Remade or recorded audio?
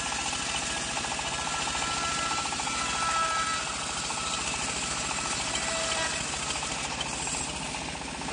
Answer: recorded